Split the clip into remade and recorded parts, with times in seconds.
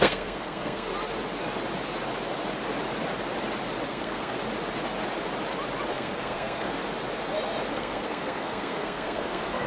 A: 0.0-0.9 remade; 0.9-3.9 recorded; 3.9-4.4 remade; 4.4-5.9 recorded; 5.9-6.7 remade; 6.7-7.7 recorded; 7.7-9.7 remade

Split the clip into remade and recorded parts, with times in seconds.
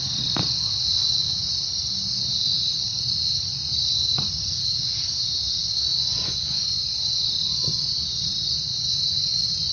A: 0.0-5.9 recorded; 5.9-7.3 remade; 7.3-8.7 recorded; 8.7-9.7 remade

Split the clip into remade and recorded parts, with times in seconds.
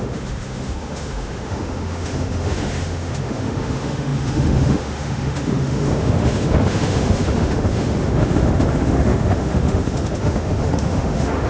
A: 0.0-11.5 remade